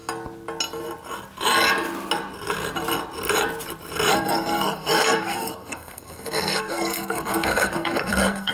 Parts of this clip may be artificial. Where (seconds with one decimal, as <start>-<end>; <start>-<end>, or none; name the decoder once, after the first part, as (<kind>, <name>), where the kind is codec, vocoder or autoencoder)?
4.1-8.5 (codec, SNAC)